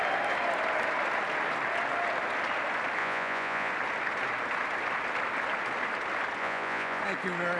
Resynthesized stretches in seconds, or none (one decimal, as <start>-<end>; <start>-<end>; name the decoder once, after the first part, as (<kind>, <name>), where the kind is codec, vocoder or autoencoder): 3.0-3.7 (vocoder, Vocos); 6.4-7.0